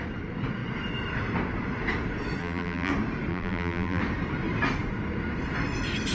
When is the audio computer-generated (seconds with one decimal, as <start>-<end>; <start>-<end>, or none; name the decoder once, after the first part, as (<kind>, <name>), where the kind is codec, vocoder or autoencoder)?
2.4-2.9 (vocoder, BigVGAN v2); 3.3-4.0